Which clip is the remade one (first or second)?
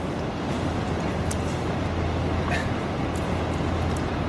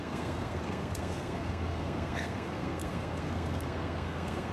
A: second